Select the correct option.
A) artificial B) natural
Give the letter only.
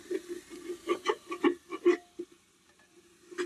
B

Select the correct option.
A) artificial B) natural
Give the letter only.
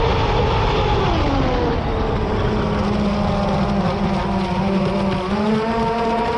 B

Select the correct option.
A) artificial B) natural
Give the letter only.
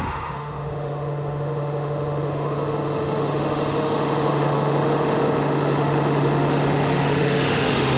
A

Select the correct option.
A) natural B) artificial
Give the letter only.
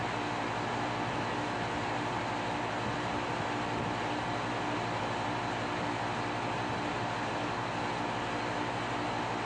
A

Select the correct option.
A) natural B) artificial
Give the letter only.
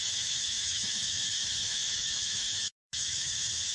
B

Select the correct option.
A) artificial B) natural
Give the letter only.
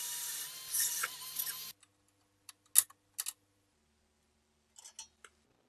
B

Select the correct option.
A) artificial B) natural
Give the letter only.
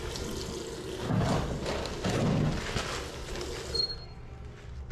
B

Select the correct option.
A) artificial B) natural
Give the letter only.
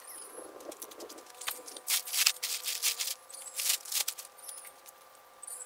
B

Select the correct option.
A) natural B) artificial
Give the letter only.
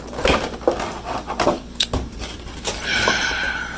A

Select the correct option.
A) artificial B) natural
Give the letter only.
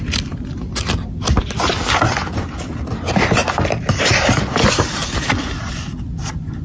B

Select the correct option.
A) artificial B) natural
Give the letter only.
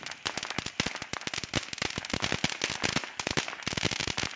B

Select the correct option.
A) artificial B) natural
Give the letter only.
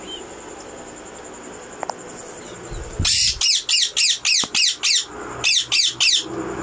B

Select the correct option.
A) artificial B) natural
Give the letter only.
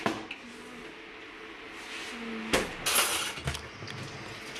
B